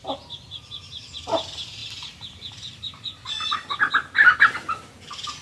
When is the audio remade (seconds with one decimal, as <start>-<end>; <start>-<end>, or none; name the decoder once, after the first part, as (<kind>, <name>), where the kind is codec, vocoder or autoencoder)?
none